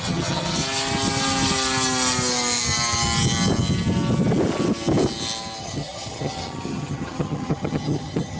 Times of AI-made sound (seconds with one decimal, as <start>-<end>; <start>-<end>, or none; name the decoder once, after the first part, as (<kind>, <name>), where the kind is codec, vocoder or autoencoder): 0.0-0.6 (vocoder, HiFi-GAN); 5.6-8.4